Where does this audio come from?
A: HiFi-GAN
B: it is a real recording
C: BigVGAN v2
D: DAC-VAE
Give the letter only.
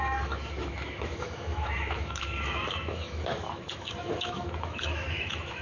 D